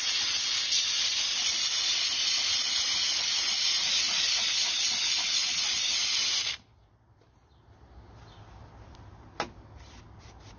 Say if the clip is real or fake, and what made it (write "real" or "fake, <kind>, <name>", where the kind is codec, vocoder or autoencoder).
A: real